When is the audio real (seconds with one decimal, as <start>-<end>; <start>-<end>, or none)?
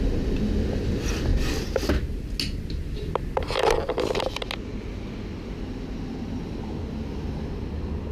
0.0-8.1